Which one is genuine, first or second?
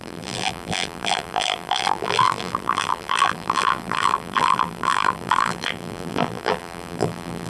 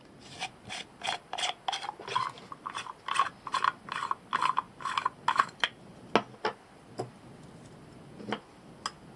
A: second